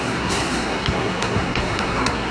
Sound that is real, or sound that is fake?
fake